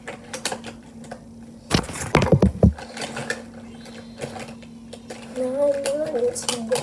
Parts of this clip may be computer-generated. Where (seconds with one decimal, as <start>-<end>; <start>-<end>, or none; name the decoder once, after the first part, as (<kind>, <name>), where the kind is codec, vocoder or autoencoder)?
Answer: none